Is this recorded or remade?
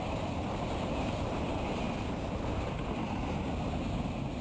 recorded